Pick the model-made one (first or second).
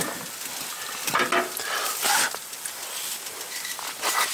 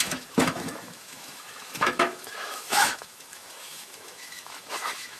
second